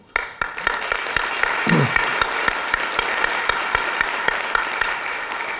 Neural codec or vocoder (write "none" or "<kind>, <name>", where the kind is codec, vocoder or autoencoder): none